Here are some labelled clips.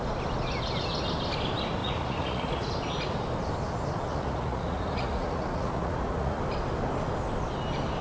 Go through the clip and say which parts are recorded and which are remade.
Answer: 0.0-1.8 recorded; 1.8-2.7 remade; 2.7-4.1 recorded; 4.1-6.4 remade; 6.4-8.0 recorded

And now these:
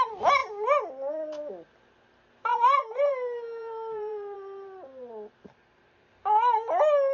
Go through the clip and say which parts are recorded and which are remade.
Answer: 0.0-2.5 recorded; 2.5-5.1 remade; 5.1-7.1 recorded

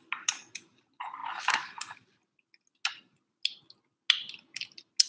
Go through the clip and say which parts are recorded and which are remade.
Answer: 0.0-5.1 recorded

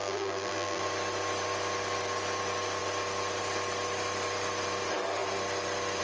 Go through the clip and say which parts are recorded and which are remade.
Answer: 0.0-0.8 remade; 0.8-6.0 recorded

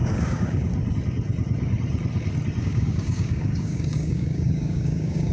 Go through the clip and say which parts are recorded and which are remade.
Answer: 0.0-0.7 remade; 0.7-2.6 recorded; 2.6-5.3 remade